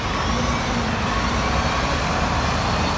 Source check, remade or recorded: recorded